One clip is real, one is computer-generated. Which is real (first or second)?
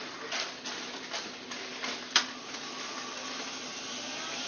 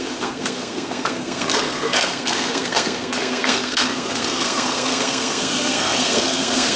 first